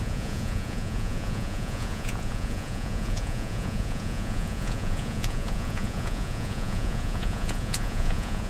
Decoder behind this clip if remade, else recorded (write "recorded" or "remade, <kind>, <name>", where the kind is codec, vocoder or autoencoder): remade, vocoder, Vocos